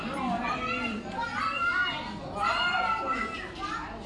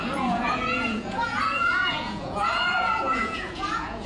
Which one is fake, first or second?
second